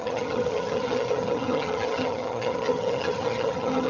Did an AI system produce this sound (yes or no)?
yes